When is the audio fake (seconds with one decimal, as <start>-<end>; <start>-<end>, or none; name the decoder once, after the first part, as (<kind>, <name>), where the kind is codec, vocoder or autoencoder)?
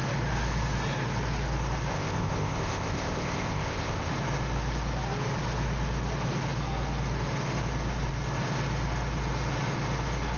1.9-4.1 (codec, ZipCodec)